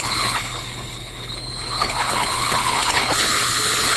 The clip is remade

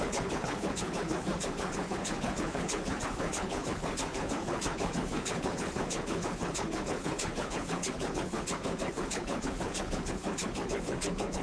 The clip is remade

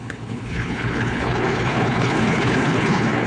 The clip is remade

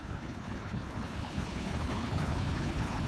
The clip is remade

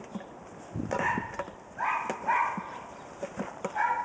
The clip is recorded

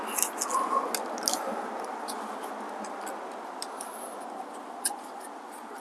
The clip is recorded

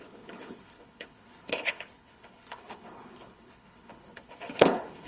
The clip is remade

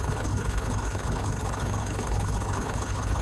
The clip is remade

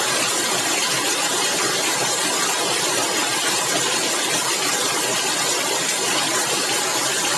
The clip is recorded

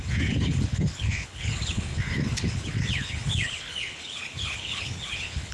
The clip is remade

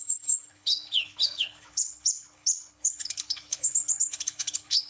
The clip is remade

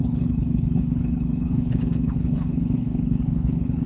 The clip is remade